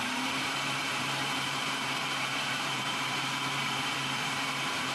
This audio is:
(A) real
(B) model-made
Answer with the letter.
B